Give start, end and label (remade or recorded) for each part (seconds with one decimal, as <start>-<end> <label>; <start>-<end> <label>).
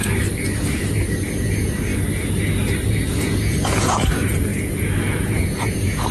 0.0-0.9 recorded; 0.9-1.9 remade; 1.9-2.9 recorded; 2.9-6.1 remade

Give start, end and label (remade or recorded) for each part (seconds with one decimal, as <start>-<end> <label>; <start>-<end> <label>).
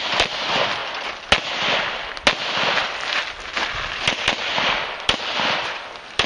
0.0-0.8 remade; 0.8-3.9 recorded; 3.9-6.3 remade